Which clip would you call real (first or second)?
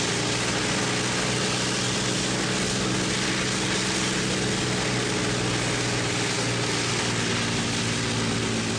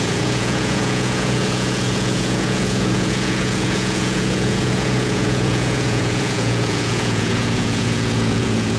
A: first